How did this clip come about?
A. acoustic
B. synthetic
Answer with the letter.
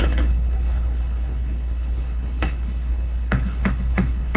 B